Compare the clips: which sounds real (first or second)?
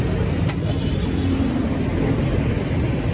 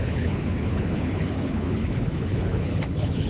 first